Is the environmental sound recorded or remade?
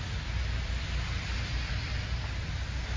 recorded